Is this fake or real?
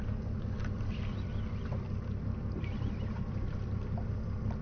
real